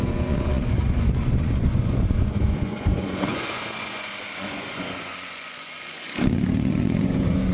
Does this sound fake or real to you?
fake